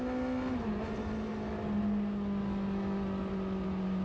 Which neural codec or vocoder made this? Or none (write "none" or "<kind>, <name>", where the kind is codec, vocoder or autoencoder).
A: none